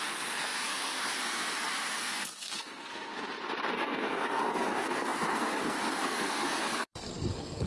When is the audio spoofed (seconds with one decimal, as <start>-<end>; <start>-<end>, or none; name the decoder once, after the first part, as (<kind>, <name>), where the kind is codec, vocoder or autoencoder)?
0.0-3.1 (codec, SNAC); 3.7-7.7